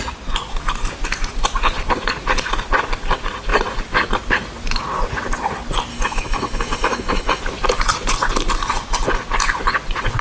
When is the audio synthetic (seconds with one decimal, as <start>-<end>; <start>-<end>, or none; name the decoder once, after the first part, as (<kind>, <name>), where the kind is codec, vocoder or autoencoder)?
5.9-7.4 (autoencoder, DAC-VAE)